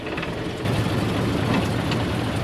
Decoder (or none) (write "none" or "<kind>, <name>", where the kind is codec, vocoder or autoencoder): none